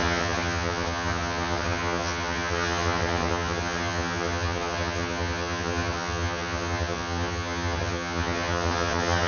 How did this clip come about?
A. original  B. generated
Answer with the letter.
B